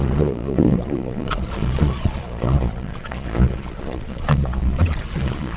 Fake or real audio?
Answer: fake